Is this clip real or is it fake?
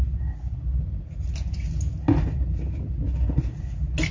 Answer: real